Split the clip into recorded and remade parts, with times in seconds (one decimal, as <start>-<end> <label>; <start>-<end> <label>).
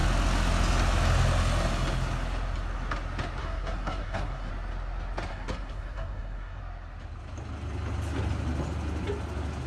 0.0-3.4 recorded; 3.4-4.5 remade; 4.5-5.3 recorded; 5.3-6.6 remade; 6.6-9.7 recorded